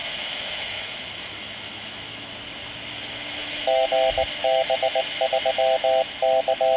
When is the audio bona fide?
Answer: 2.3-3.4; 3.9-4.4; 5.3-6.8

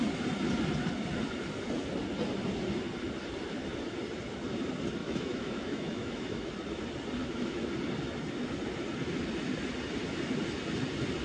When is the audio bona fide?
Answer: 0.0-5.0; 6.5-7.2; 7.7-11.2